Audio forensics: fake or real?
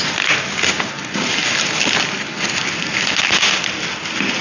real